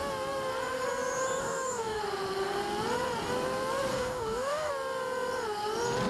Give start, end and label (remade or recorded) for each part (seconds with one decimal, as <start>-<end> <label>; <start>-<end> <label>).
0.0-1.4 recorded; 1.4-2.0 remade; 2.0-3.9 recorded; 3.9-4.7 remade; 4.7-6.1 recorded